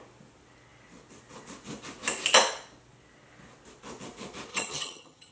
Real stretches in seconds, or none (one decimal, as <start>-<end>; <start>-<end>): 0.0-4.5